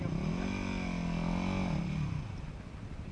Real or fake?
real